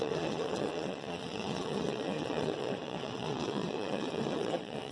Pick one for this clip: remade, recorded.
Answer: remade